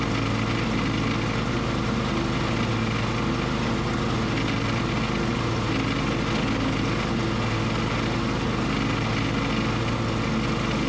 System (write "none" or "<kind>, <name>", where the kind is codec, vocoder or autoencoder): none